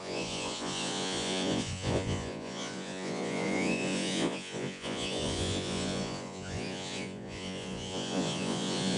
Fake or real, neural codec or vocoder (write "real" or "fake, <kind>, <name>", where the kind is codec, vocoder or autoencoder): fake, vocoder, Vocos